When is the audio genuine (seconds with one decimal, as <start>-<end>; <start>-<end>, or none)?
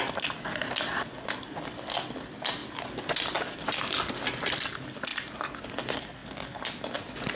0.0-7.4